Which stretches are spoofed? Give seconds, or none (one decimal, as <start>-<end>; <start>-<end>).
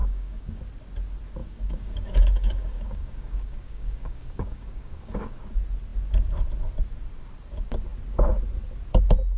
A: 0.0-0.6; 1.4-5.4